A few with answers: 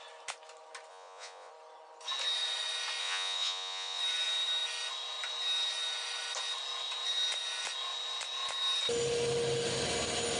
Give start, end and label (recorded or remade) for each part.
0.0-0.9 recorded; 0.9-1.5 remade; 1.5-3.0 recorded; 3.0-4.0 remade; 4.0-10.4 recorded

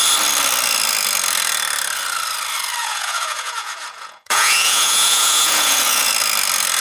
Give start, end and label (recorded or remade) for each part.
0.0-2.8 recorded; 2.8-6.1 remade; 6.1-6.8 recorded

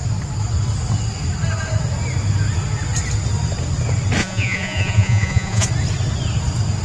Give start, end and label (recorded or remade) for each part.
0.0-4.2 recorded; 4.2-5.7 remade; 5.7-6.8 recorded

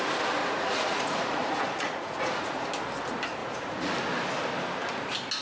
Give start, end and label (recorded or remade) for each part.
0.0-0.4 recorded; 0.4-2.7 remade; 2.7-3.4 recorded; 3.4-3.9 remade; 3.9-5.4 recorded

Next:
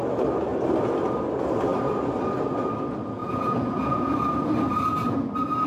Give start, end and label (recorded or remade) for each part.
0.0-3.2 recorded; 3.2-4.1 remade; 4.1-5.7 recorded